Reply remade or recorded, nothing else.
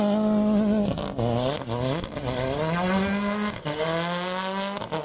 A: recorded